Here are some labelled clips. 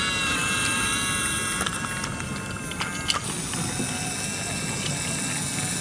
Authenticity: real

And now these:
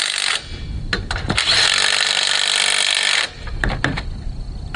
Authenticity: real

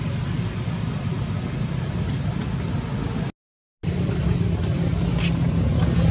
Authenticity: real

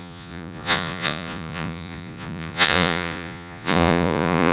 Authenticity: fake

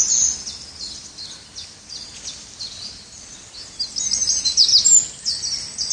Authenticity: real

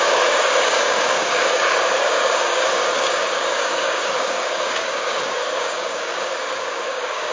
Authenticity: fake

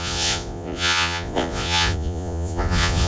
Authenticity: fake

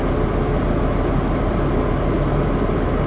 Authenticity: real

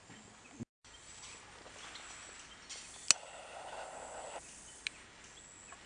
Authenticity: real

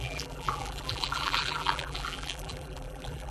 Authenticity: fake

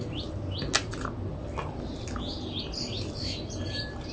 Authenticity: real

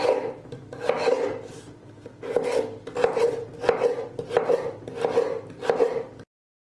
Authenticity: real